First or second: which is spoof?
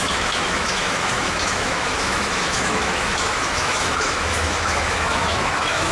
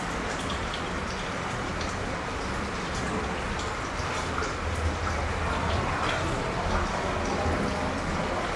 first